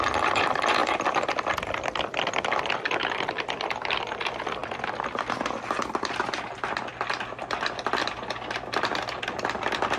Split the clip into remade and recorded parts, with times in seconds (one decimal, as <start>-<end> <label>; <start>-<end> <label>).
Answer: 0.0-10.0 recorded